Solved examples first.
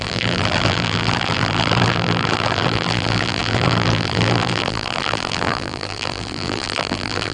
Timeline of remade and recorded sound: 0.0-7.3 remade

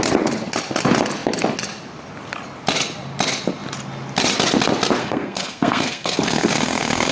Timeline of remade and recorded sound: 0.0-5.0 recorded; 5.0-7.1 remade

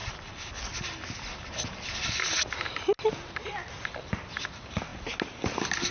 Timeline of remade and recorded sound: 0.0-5.9 recorded

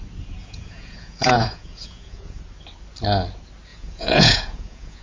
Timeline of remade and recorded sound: 0.0-0.4 recorded; 0.4-2.4 remade; 2.4-3.7 recorded; 3.7-5.0 remade

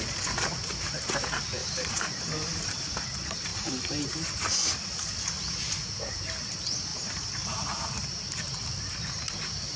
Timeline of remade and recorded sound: 0.0-1.6 recorded; 1.6-2.7 remade; 2.7-3.5 recorded; 3.5-4.1 remade; 4.1-6.9 recorded; 6.9-7.8 remade; 7.8-9.8 recorded

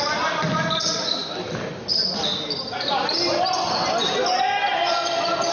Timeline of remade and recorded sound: 0.0-5.5 recorded

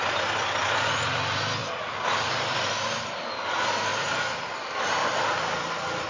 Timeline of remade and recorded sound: 0.0-5.0 recorded; 5.0-5.5 remade; 5.5-6.1 recorded

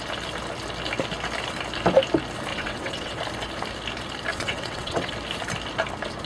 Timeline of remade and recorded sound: 0.0-2.5 recorded; 2.5-3.2 remade; 3.2-4.3 recorded; 4.3-5.1 remade; 5.1-6.2 recorded